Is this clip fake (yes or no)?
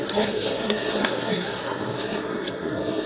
yes